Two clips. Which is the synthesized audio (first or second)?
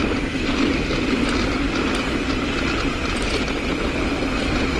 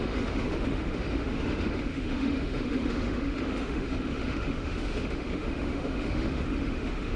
second